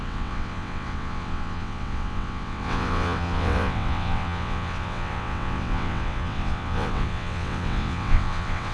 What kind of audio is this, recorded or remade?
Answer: remade